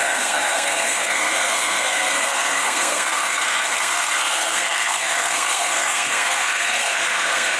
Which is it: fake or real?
fake